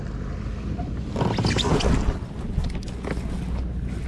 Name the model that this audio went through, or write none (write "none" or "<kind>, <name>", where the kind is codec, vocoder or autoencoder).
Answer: none